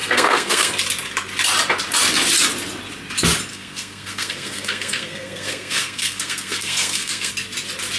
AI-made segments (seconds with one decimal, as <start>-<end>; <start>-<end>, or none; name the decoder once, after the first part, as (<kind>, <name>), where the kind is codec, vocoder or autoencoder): 0.0-0.7 (codec, SNAC); 3.5-7.3

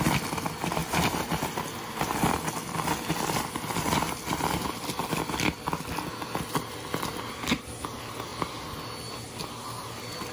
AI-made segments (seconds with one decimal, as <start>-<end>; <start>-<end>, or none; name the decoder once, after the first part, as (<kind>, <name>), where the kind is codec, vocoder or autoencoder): 0.8-1.6 (vocoder, BigVGAN v2)

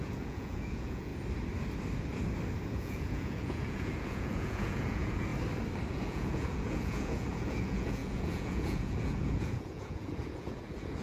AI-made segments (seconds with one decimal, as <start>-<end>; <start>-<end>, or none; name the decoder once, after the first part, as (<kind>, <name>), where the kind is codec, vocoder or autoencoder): 0.0-1.1 (vocoder, Vocos); 2.7-5.3; 5.9-11.0

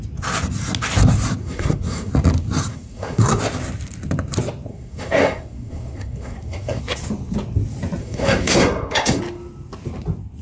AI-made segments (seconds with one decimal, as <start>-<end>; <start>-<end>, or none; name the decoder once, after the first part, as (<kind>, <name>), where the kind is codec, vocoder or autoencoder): 1.4-2.1 (codec, SNAC); 2.7-3.4; 4.7-6.8; 8.0-9.2

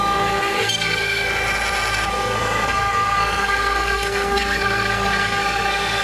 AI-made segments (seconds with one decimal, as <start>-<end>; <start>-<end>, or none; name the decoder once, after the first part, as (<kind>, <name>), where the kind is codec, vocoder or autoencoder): 0.0-1.3 (codec, SNAC); 2.1-6.0

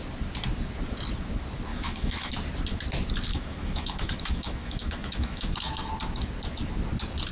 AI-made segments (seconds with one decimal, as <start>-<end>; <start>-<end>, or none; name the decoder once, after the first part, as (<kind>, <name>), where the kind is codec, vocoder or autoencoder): 1.7-2.3 (autoencoder, DAC-VAE); 3.3-5.9

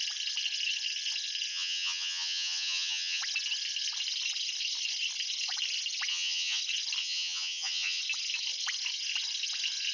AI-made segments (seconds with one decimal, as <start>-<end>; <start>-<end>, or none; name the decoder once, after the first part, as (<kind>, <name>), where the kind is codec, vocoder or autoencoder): 1.5-3.2 (vocoder, HiFi-GAN); 6.1-6.6; 7.0-8.0